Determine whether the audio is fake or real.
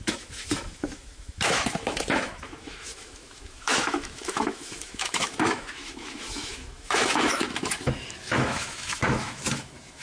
fake